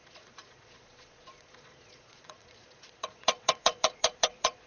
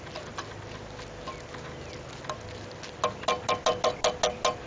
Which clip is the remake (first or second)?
first